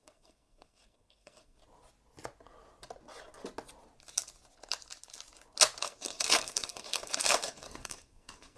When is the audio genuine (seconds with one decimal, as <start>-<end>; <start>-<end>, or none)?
1.6-5.8